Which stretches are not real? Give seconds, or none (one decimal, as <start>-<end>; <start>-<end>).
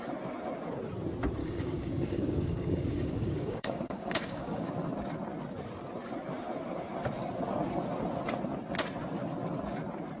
1.4-4.7